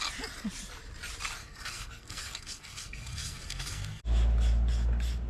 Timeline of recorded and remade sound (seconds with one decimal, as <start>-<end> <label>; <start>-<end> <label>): 0.0-1.4 recorded; 1.4-4.0 remade; 4.0-5.3 recorded